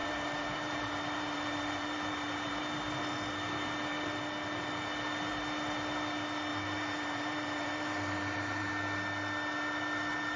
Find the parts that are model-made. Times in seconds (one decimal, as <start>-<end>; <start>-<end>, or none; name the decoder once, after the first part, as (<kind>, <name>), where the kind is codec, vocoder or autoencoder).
0.0-2.6 (vocoder, BigVGAN v2); 6.5-8.7